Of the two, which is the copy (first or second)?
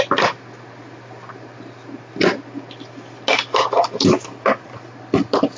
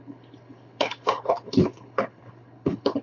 second